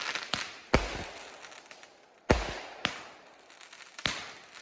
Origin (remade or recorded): recorded